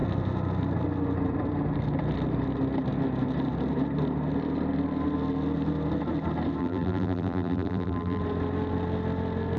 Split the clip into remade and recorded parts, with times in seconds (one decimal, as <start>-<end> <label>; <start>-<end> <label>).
0.0-6.6 recorded; 6.6-8.2 remade; 8.2-9.6 recorded